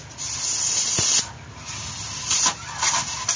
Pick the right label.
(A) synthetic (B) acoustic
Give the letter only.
B